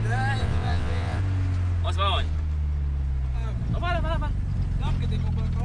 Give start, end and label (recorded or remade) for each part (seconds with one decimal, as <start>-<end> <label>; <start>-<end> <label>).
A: 0.0-0.4 recorded; 0.4-1.2 remade; 1.2-5.6 recorded